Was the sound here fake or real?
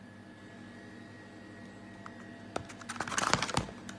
real